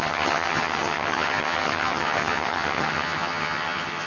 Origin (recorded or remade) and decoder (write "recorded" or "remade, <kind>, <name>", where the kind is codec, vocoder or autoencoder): remade, vocoder, HiFi-GAN